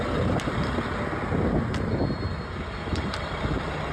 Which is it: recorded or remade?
recorded